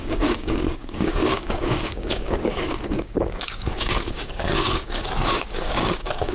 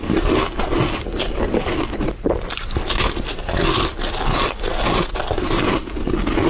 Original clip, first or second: second